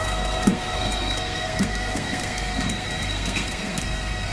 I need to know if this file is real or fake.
fake